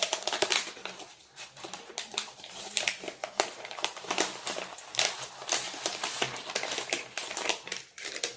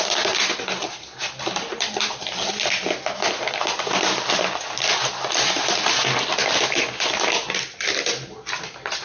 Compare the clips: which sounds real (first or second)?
second